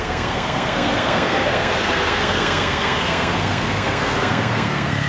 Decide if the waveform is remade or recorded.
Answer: remade